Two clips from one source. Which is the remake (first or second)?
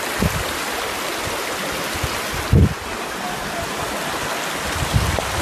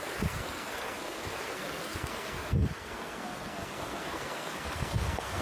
second